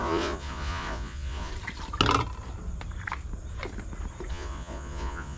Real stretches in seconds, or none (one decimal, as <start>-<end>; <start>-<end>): 1.5-4.3